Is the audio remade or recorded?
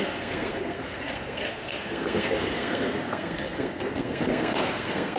remade